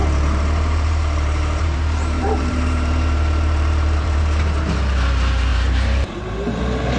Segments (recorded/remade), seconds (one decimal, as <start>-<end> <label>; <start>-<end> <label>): 0.0-4.2 remade; 4.2-5.5 recorded; 5.5-6.6 remade; 6.6-7.0 recorded